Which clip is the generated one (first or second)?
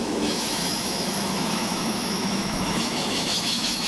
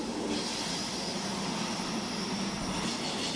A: first